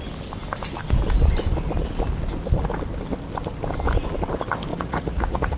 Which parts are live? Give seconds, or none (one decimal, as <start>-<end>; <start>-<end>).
0.0-4.7